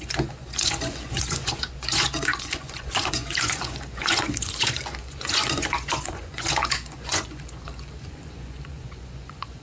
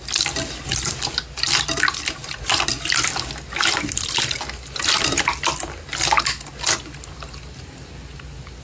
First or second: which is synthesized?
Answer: first